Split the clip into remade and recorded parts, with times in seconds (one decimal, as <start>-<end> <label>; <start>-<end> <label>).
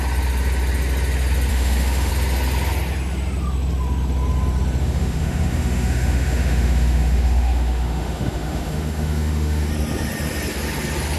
0.0-1.5 recorded; 1.5-2.1 remade; 2.1-4.8 recorded; 4.8-9.7 remade; 9.7-11.2 recorded